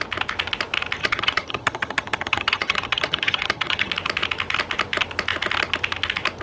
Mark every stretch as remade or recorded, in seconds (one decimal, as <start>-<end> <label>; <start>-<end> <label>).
0.0-1.0 recorded; 1.0-3.9 remade; 3.9-6.4 recorded